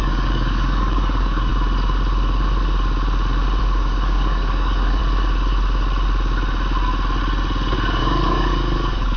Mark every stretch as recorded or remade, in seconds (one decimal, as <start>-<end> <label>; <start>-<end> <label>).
0.0-1.5 remade; 1.5-3.6 recorded; 3.6-5.0 remade; 5.0-8.0 recorded; 8.0-9.2 remade